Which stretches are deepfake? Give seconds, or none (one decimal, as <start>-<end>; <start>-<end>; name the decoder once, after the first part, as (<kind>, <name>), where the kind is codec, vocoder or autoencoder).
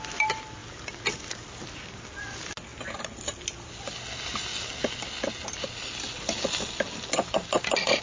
none